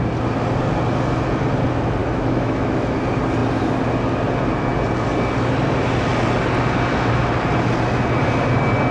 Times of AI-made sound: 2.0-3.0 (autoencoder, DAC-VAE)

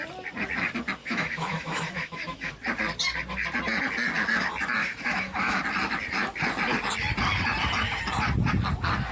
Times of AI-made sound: 1.0-2.5 (autoencoder, DAC-VAE); 4.8-5.6

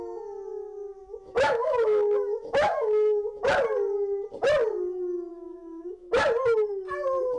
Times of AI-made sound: 0.5-3.4 (autoencoder, DAC-VAE); 5.3-6.2